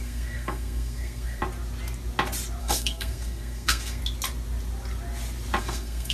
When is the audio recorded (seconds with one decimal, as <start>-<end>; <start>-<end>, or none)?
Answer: 1.4-2.6; 4.0-5.6